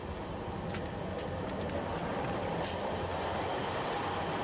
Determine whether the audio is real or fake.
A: real